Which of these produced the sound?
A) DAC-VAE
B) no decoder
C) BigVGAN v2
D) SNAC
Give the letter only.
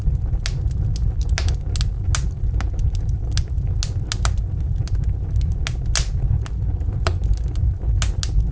B